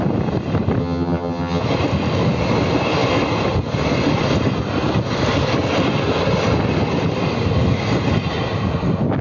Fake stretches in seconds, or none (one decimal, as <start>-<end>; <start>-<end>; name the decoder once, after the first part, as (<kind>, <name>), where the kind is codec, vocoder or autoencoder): 0.8-1.6 (vocoder, HiFi-GAN)